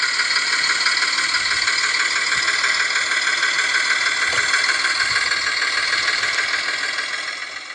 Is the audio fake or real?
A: real